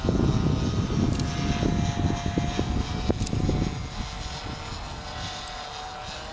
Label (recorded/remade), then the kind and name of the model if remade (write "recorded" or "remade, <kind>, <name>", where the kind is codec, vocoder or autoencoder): recorded